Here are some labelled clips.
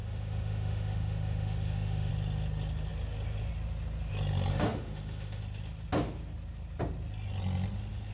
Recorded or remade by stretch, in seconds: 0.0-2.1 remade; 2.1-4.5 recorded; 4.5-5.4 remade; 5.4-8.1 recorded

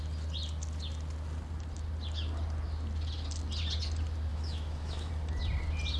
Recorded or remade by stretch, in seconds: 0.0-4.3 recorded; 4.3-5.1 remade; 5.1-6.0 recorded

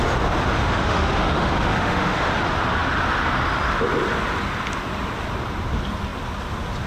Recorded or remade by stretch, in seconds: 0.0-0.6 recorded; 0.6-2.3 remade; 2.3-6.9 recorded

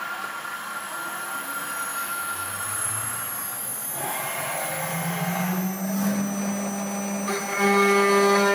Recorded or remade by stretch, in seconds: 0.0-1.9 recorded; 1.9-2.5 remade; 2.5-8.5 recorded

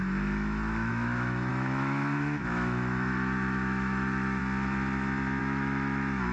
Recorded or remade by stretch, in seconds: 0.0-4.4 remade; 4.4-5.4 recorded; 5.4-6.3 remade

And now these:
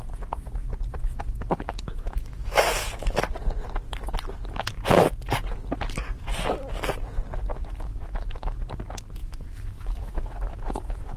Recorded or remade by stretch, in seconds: 0.0-1.0 recorded; 1.0-3.2 remade; 3.2-7.5 recorded; 7.5-8.6 remade; 8.6-9.2 recorded; 9.2-11.2 remade